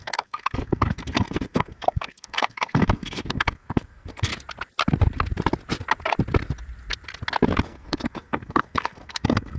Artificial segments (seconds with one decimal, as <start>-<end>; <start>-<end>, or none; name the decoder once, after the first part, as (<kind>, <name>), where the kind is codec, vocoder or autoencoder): 0.0-4.3 (codec, SNAC); 7.6-9.6